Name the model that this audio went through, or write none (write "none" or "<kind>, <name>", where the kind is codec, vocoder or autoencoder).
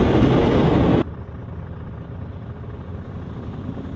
none